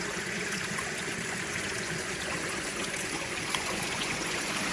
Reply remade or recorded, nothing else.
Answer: remade